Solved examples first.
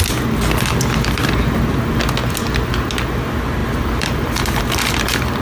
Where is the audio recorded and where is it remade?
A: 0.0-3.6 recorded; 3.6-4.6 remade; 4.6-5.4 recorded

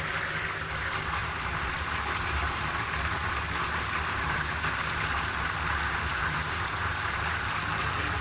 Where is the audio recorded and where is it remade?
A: 0.0-1.2 recorded; 1.2-4.6 remade; 4.6-6.1 recorded; 6.1-8.2 remade